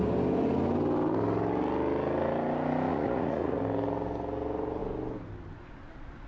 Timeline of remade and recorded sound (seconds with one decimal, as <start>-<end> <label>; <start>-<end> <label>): 0.0-2.9 recorded; 2.9-3.6 remade; 3.6-6.3 recorded